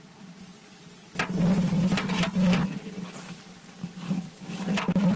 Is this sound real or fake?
real